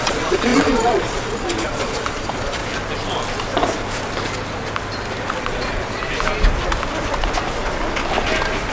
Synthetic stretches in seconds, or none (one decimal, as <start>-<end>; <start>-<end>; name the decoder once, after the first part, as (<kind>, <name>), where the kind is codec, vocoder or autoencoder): 0.0-2.6 (vocoder, Vocos); 5.4-6.0